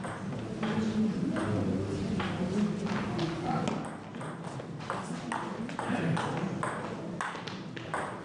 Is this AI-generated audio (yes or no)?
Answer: no